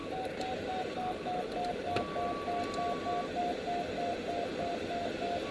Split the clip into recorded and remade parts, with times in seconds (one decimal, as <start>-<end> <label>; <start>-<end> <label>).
0.0-5.5 recorded